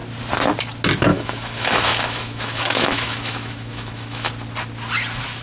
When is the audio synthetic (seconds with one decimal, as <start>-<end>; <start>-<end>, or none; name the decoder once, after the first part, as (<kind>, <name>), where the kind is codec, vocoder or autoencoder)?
1.1-4.3 (autoencoder, DAC-VAE)